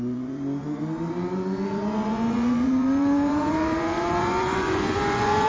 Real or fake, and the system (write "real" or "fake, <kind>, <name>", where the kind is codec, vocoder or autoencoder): fake, vocoder, Vocos